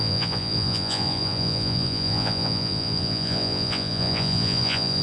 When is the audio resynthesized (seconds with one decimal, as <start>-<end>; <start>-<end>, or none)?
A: 0.0-5.0